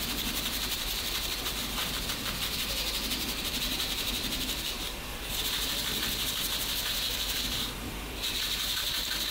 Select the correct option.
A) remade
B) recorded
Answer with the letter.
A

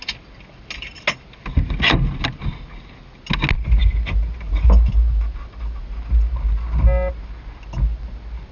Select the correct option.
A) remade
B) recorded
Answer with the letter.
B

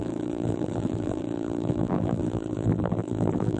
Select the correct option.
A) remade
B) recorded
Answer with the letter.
A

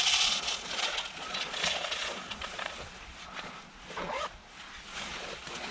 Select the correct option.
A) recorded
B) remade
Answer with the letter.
B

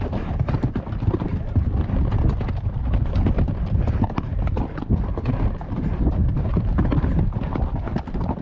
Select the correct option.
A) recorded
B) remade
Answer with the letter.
A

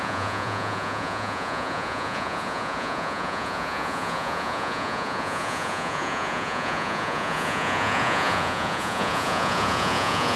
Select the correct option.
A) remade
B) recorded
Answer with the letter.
A